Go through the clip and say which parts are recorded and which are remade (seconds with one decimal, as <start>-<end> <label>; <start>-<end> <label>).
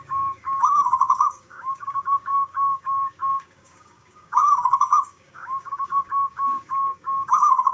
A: 0.0-7.7 remade